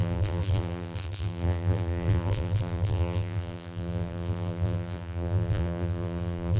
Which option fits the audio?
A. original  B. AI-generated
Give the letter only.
B